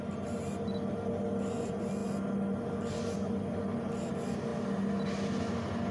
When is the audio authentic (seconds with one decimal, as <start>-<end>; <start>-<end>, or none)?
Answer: 0.0-5.9